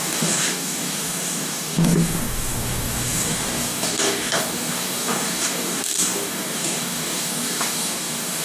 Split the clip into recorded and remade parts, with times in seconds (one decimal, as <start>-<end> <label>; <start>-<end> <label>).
0.0-8.4 remade

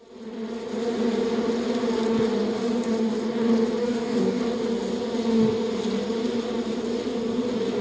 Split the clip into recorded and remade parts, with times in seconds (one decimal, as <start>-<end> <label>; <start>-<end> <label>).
0.0-3.8 recorded; 3.8-4.4 remade; 4.4-7.8 recorded

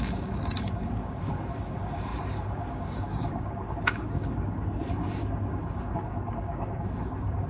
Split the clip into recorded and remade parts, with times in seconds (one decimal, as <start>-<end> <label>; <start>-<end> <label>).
0.0-7.5 remade